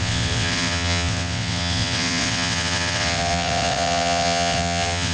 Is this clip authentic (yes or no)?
no